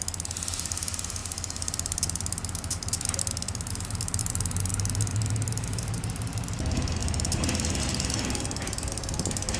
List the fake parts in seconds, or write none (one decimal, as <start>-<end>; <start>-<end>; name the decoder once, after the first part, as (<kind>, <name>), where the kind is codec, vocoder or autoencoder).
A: none